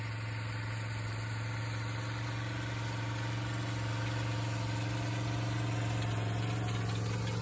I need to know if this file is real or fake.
real